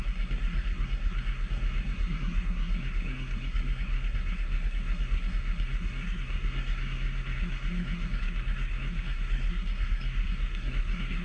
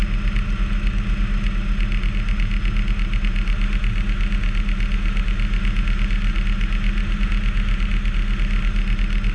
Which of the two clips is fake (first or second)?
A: first